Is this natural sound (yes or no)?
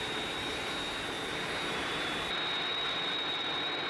yes